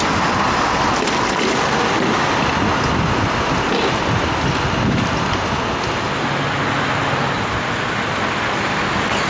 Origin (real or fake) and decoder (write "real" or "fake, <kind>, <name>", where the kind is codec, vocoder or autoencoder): real